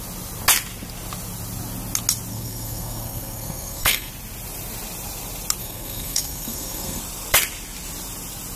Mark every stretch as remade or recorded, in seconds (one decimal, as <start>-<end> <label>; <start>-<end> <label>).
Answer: 0.0-2.3 recorded; 2.3-4.1 remade; 4.1-5.6 recorded; 5.6-7.0 remade; 7.0-8.6 recorded